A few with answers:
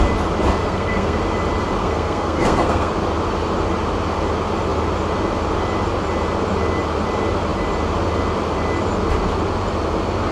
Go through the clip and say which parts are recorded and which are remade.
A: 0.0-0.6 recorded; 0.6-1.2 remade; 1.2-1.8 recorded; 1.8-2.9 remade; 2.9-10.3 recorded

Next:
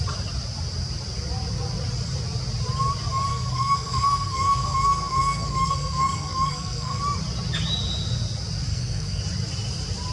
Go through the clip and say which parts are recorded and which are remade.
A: 0.0-3.3 recorded; 3.3-7.0 remade; 7.0-8.7 recorded; 8.7-9.2 remade; 9.2-10.1 recorded